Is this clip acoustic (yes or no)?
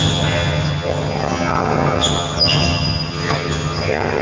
no